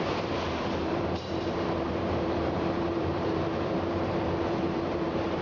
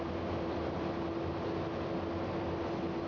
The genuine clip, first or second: second